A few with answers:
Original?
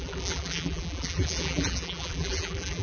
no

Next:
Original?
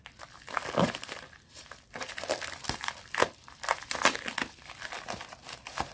no